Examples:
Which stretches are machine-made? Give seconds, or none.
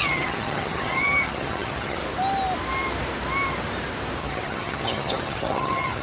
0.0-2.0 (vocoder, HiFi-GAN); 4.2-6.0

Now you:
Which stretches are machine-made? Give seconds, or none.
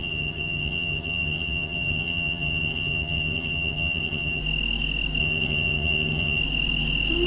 0.0-4.4 (vocoder, HiFi-GAN); 5.2-6.4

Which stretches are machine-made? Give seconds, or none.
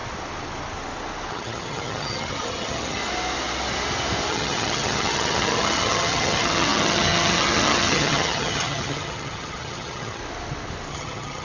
1.3-3.0 (vocoder, HiFi-GAN); 4.3-10.2; 10.9-11.4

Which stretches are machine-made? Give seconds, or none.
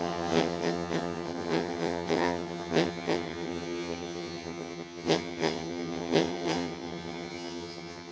0.0-8.1 (vocoder, HiFi-GAN)